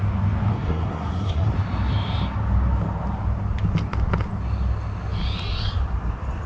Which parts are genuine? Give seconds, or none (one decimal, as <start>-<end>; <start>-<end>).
0.0-0.5; 1.5-6.5